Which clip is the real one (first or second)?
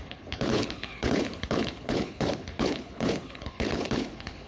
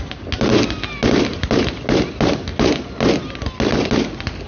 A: second